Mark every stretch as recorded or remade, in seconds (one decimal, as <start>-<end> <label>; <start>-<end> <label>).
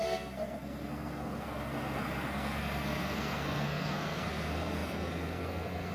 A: 0.0-5.9 remade